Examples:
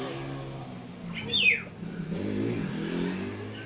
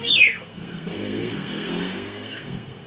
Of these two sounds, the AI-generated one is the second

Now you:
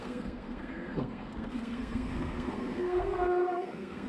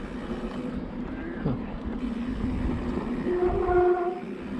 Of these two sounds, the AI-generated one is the first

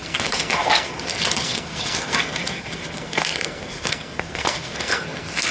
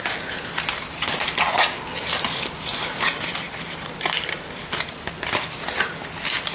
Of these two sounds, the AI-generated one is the first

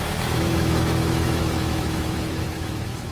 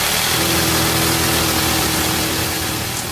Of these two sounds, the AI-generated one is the first